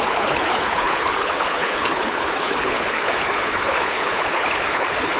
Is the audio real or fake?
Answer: fake